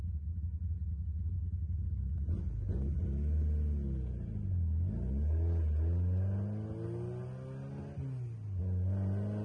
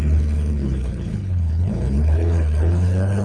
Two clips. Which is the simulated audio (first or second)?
second